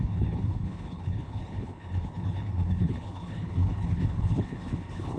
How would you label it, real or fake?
fake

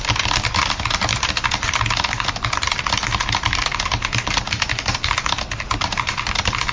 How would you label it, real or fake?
real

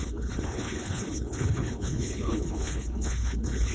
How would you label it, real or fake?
fake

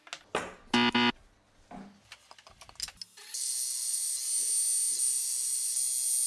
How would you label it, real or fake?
real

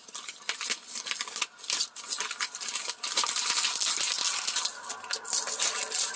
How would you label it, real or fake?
real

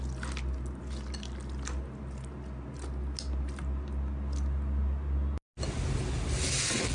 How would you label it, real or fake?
real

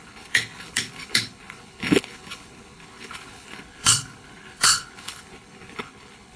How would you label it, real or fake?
fake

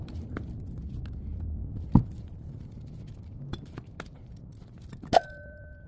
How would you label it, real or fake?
real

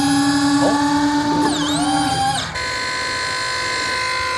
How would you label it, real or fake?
real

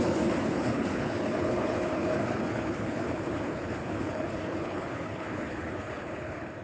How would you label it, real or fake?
fake